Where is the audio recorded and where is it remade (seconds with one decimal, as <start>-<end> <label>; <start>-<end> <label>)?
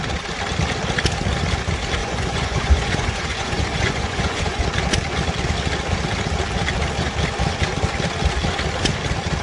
0.0-2.0 recorded; 2.0-4.6 remade; 4.6-9.4 recorded